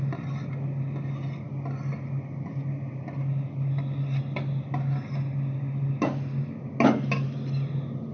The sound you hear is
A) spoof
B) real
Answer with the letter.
B